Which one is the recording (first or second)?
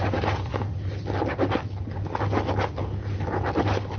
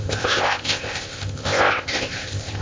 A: first